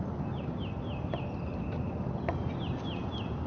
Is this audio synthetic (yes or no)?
no